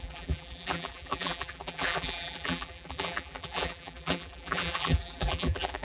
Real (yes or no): no